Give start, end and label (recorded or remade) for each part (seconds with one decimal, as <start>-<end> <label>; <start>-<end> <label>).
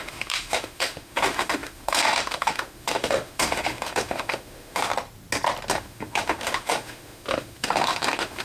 0.0-4.9 remade; 4.9-5.7 recorded; 5.7-8.4 remade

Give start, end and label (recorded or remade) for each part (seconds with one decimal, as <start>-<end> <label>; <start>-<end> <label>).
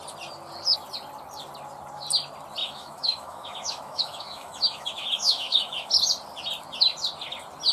0.0-2.6 recorded; 2.6-5.9 remade; 5.9-7.7 recorded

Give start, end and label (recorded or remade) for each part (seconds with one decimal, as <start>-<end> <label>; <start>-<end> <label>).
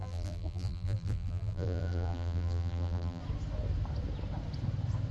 0.0-3.2 remade; 3.2-5.1 recorded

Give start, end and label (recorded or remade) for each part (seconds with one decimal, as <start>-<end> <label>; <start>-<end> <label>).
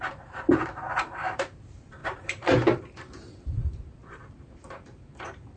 0.0-5.6 remade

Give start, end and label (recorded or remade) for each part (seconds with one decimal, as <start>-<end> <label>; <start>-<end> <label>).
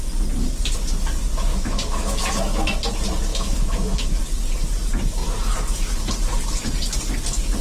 0.0-1.5 recorded; 1.5-2.4 remade; 2.4-3.3 recorded; 3.3-4.2 remade; 4.2-7.6 recorded